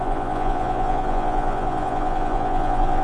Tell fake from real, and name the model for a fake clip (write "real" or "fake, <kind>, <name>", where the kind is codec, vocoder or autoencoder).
fake, vocoder, Vocos